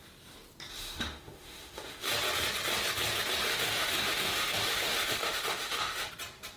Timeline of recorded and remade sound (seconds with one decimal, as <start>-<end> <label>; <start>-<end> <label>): 0.0-0.7 recorded; 0.7-2.1 remade; 2.1-3.5 recorded; 3.5-6.1 remade; 6.1-6.6 recorded